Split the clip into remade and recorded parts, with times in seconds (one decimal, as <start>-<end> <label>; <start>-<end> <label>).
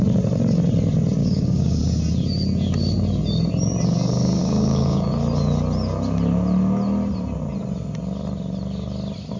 0.0-1.2 recorded; 1.2-1.8 remade; 1.8-4.4 recorded; 4.4-5.1 remade; 5.1-9.4 recorded